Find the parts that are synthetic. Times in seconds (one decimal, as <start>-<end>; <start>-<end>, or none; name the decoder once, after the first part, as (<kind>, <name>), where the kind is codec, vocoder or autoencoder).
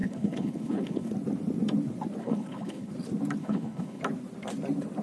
0.0-1.1 (codec, HILCodec); 2.2-2.9; 3.4-4.0